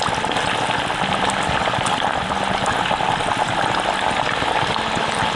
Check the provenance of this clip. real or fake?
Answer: real